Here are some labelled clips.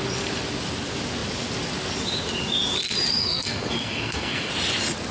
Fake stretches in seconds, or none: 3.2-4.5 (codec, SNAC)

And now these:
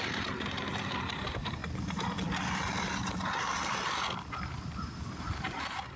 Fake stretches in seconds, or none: 0.0-1.6 (vocoder, BigVGAN v2); 5.2-6.0

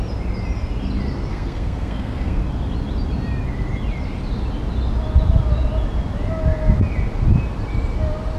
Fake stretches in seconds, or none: 1.3-2.4 (codec, SNAC)

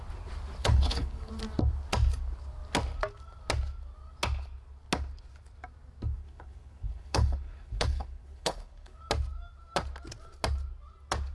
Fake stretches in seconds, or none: 0.6-1.3 (codec, HILCodec); 6.2-9.0

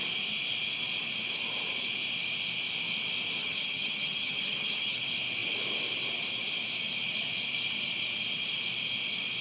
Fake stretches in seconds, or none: 3.4-5.0 (vocoder, HiFi-GAN)